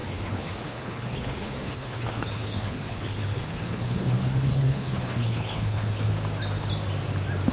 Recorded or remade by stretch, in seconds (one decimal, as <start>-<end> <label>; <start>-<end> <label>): 0.0-6.1 remade; 6.1-7.5 recorded